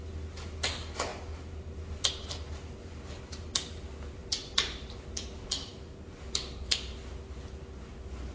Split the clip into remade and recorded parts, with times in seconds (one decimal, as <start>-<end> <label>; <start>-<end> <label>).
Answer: 0.0-8.3 recorded